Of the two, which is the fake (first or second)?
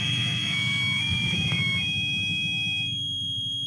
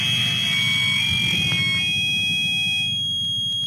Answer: first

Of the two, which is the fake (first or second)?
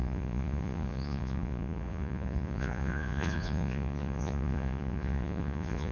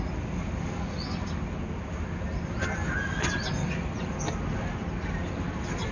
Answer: first